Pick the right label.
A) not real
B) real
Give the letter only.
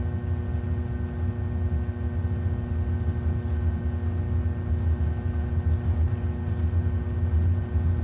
B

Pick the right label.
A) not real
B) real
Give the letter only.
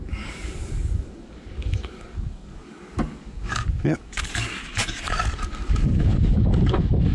A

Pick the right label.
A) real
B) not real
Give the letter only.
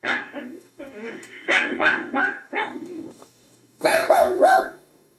B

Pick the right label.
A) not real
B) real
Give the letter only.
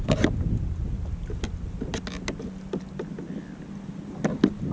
B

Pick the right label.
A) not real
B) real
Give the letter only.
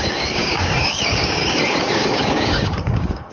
A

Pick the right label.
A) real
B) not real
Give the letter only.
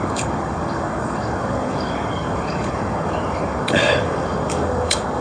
B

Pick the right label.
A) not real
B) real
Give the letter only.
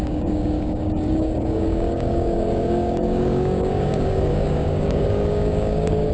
A